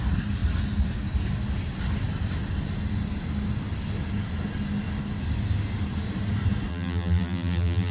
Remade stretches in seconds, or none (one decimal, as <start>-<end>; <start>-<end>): 6.7-7.9